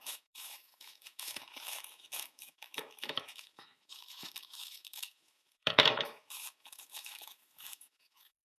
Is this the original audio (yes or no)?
no